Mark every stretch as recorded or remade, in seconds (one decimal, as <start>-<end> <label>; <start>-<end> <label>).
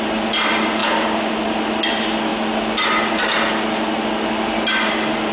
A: 0.0-5.3 recorded